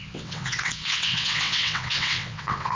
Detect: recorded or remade remade